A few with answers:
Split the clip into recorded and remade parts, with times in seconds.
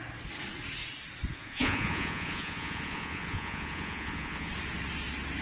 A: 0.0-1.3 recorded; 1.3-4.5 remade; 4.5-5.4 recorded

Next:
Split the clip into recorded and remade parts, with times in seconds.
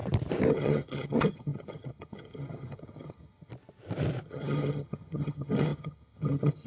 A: 0.0-0.5 recorded; 0.5-3.5 remade; 3.5-4.2 recorded; 4.2-6.7 remade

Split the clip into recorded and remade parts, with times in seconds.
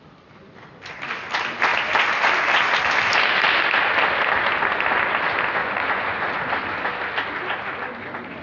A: 0.0-5.6 recorded; 5.6-6.4 remade; 6.4-8.4 recorded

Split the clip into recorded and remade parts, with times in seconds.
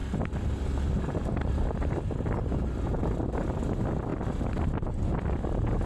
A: 0.0-5.9 recorded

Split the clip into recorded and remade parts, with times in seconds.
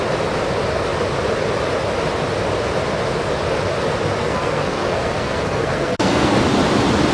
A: 0.0-4.2 recorded; 4.2-6.4 remade; 6.4-7.1 recorded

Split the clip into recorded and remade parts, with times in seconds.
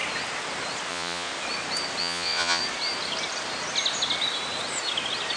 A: 0.0-0.9 recorded; 0.9-1.3 remade; 1.3-2.0 recorded; 2.0-2.6 remade; 2.6-5.4 recorded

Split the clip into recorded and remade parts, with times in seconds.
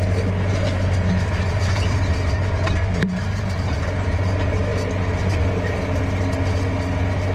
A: 0.0-0.5 recorded; 0.5-3.7 remade; 3.7-7.3 recorded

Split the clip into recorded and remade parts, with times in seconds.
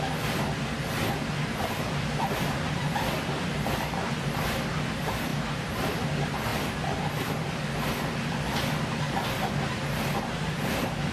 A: 0.0-11.1 recorded